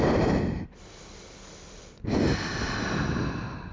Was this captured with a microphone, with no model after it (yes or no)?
yes